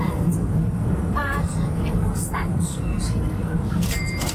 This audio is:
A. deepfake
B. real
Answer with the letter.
A